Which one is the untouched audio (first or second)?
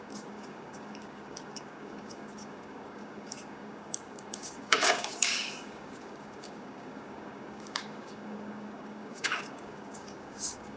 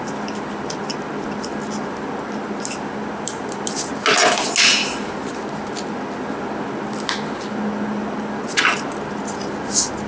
second